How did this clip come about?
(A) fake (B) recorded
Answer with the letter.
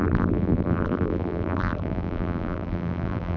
A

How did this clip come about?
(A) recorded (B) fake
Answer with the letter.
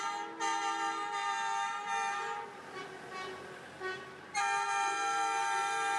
A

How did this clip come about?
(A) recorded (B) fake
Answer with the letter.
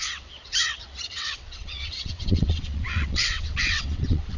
B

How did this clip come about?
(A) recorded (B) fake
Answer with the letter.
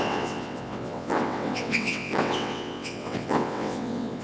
B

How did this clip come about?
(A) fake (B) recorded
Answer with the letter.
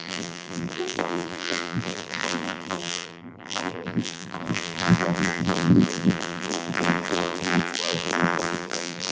A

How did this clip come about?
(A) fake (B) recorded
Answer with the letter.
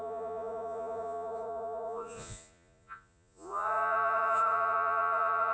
A